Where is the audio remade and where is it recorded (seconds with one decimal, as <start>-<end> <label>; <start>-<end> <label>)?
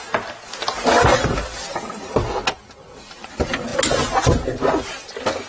0.0-5.5 recorded